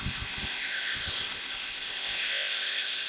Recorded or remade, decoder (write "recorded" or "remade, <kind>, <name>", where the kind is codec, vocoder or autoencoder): remade, codec, ZipCodec